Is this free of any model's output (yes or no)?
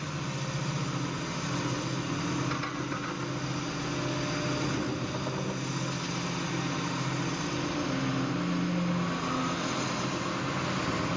yes